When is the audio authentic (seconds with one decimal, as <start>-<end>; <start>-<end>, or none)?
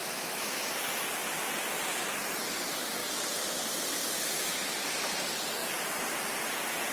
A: 0.7-6.9